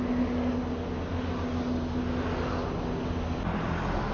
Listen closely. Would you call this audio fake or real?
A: real